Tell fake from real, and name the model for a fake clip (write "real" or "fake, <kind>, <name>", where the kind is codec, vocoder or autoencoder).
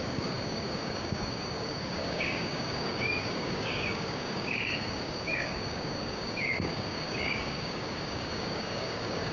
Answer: fake, codec, DAC